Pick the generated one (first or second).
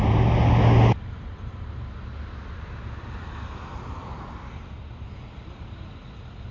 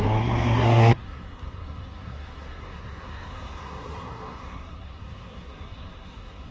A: second